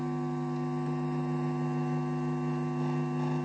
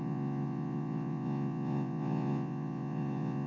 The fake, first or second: second